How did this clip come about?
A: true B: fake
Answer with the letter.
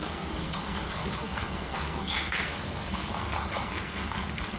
B